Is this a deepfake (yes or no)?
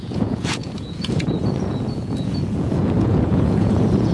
yes